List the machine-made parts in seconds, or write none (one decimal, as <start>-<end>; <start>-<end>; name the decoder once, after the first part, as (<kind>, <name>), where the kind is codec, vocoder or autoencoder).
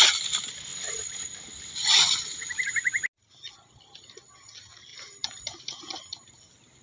2.3-2.9 (vocoder, BigVGAN v2); 4.9-6.2